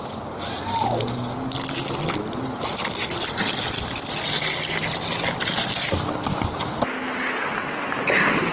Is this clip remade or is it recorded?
recorded